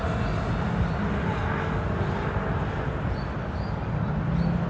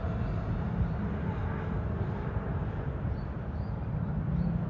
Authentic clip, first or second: first